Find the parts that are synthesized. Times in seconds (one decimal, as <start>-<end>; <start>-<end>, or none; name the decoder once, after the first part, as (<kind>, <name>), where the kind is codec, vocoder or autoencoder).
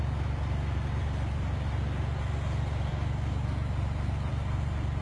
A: none